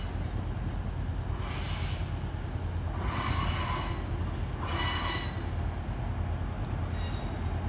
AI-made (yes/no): no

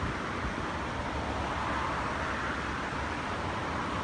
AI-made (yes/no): no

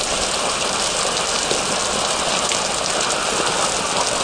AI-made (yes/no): no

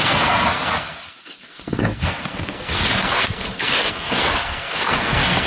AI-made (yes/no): yes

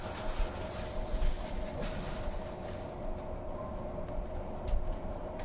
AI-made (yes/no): no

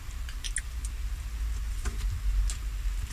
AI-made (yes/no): no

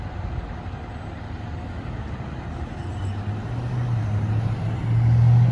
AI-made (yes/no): no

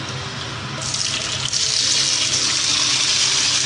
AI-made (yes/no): no